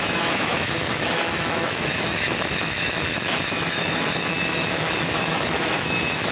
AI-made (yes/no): yes